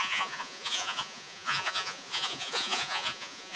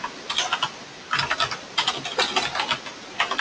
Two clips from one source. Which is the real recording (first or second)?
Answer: second